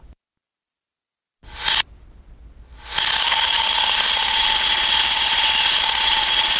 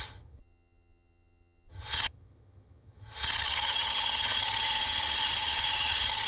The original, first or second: first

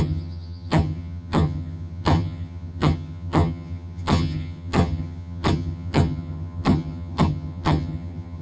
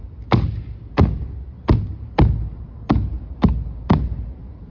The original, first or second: second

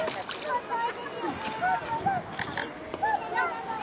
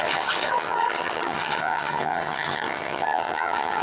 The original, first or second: first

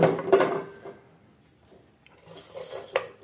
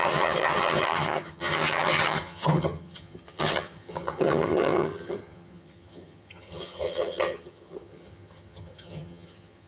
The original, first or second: first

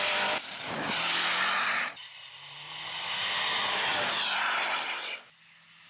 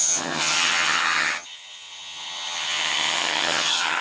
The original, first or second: first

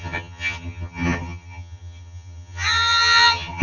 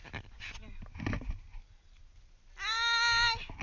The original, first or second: second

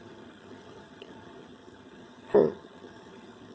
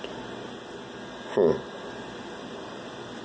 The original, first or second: second